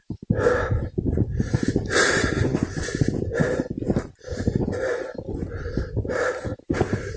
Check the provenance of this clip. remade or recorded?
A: recorded